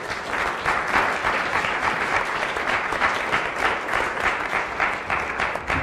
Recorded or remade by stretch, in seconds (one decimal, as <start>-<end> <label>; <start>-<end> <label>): 0.0-1.2 recorded; 1.2-4.7 remade; 4.7-5.8 recorded